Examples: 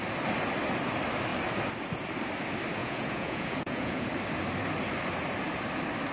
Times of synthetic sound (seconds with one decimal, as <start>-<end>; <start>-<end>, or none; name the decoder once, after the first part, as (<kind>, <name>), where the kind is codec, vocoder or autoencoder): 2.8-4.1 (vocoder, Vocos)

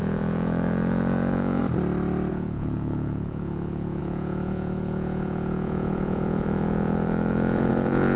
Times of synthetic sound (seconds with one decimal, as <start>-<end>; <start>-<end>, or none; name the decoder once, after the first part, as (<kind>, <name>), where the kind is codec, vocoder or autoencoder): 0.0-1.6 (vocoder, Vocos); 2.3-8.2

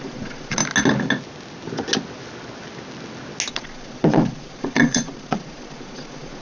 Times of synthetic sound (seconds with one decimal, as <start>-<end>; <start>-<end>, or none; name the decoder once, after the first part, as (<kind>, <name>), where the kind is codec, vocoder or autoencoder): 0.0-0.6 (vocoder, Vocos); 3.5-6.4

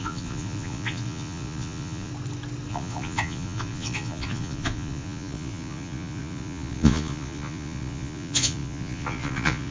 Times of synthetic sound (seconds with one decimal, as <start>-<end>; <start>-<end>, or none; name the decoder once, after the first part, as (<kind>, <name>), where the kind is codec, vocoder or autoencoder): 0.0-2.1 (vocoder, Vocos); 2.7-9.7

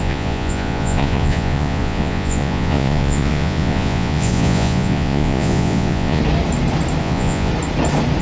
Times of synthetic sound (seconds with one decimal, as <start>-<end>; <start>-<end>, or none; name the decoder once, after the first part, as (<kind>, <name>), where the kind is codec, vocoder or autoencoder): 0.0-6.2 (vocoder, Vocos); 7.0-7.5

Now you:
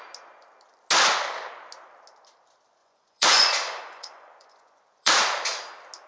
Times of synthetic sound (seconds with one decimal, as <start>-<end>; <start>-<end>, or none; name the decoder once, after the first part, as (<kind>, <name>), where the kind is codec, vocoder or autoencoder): 2.8-5.1 (vocoder, Vocos)

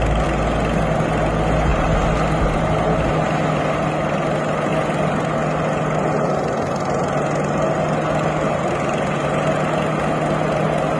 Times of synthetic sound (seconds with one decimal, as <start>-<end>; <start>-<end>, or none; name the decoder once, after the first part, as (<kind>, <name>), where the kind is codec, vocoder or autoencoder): none

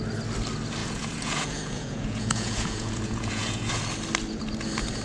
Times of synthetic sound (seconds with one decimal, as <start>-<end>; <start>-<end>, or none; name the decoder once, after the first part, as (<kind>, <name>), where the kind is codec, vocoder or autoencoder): 0.8-3.8 (vocoder, Vocos)